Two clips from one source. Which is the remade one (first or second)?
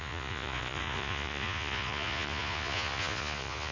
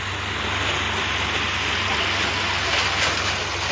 first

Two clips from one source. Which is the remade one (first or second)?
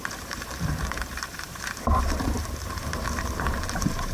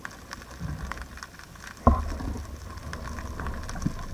first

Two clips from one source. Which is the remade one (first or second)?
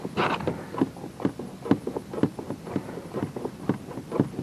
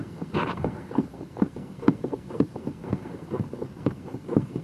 second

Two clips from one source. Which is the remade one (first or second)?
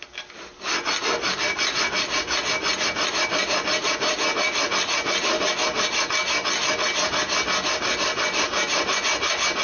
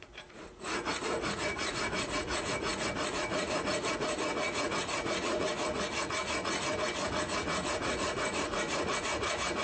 second